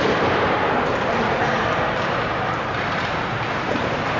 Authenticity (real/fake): real